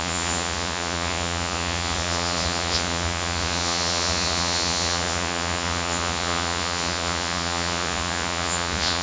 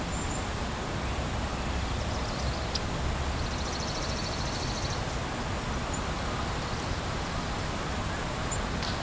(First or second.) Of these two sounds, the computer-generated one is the first